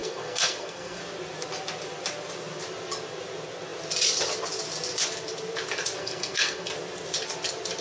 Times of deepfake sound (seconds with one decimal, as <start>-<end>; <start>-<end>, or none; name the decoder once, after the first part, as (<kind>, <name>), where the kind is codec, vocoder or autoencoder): 0.0-1.0 (codec, SNAC); 6.0-6.7